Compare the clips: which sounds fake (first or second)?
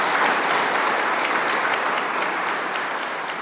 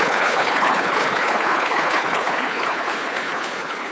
second